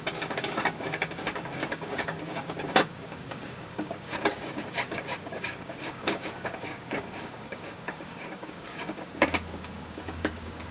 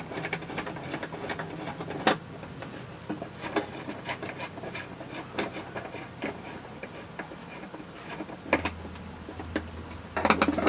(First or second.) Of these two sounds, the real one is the second